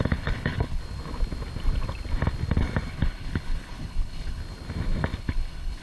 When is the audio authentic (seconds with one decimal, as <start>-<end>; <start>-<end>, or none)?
0.8-2.9; 4.4-5.2